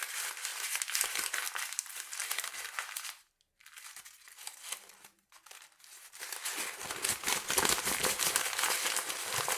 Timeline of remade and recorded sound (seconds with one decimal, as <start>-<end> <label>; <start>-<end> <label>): 0.0-9.6 recorded